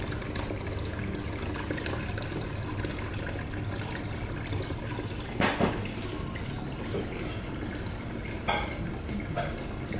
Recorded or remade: recorded